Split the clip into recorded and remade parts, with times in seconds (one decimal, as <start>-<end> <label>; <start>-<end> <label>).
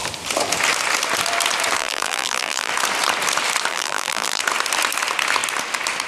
0.0-1.8 recorded; 1.8-2.7 remade; 2.7-3.7 recorded; 3.7-4.4 remade; 4.4-6.1 recorded